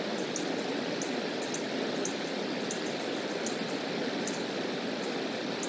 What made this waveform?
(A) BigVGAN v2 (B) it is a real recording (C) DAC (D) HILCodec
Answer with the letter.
B